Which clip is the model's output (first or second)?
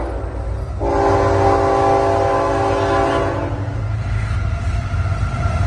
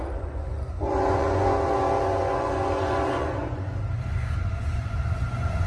second